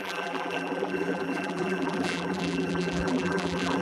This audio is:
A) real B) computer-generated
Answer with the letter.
B